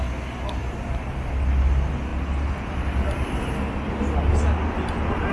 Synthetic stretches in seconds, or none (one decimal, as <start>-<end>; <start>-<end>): none

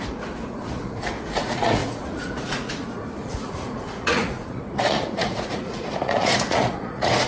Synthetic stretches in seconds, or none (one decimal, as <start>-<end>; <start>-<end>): 0.0-7.3

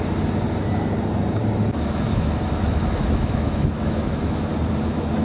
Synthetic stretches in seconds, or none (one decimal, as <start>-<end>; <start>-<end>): 1.4-4.5

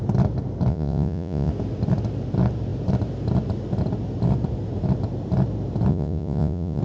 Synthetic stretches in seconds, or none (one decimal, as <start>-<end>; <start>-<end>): 0.7-1.5; 5.9-6.8

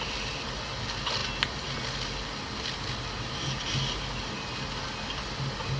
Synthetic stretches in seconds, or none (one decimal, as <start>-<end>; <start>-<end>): none